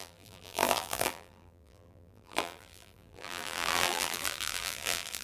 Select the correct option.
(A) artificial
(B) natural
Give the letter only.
A